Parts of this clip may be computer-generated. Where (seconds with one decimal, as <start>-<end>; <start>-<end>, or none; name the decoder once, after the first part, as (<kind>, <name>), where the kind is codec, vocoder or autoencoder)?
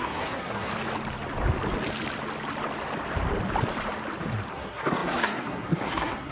0.0-0.7 (codec, SNAC); 4.5-6.3